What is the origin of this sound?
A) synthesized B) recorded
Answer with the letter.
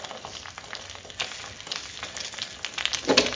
B